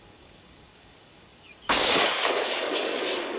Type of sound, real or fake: fake